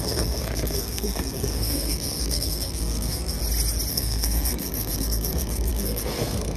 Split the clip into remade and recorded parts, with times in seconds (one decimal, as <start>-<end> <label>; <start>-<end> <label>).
0.0-3.4 remade; 3.4-3.9 recorded; 3.9-6.6 remade